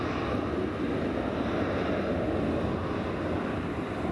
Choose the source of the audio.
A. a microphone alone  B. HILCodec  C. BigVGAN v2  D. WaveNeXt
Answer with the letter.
A